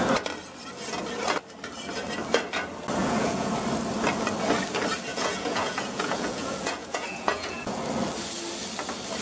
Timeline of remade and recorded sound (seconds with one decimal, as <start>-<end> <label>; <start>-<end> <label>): 0.0-3.0 recorded; 3.0-3.5 remade; 3.5-5.1 recorded; 5.1-7.8 remade; 7.8-9.2 recorded